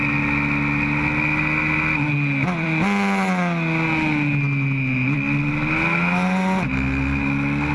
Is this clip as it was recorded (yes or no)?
yes